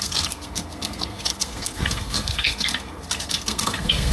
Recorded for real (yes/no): no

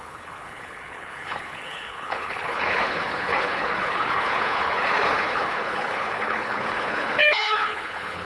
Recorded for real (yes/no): no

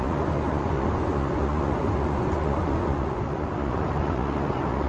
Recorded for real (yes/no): no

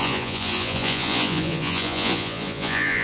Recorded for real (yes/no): no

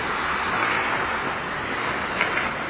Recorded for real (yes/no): yes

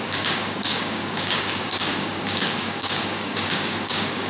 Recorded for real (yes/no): no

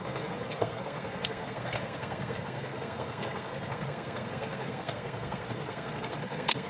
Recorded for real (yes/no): no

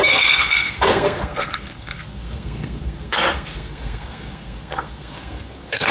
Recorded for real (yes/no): no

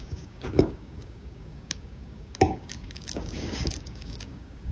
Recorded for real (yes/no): no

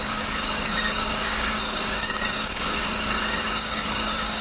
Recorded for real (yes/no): no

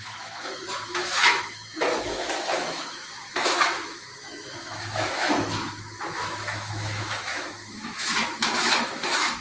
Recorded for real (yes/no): no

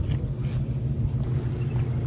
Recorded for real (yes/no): yes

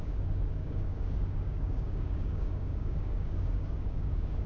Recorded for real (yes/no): no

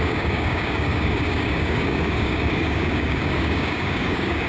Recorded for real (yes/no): no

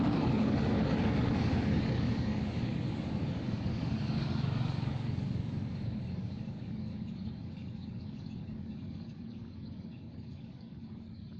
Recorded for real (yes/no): no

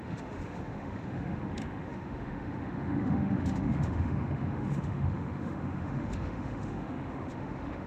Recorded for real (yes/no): no